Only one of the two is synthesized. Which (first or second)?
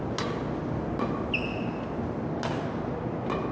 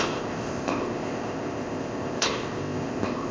second